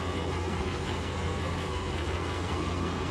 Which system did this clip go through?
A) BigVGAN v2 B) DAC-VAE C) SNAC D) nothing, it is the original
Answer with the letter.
C